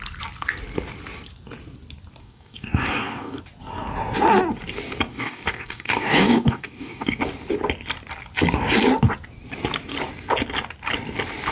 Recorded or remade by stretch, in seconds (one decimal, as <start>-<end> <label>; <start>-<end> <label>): 0.0-2.2 recorded; 2.2-3.4 remade; 3.4-5.1 recorded; 5.1-7.2 remade; 7.2-11.5 recorded